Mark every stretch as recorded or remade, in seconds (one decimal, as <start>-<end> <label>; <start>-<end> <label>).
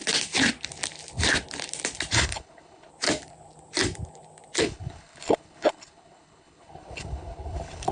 0.0-2.1 recorded; 2.1-2.9 remade; 2.9-4.6 recorded; 4.6-7.9 remade